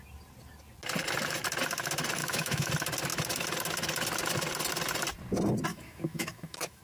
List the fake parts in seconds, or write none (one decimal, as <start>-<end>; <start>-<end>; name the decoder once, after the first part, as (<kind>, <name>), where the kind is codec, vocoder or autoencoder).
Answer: 2.2-2.7 (autoencoder, DAC-VAE); 5.7-6.8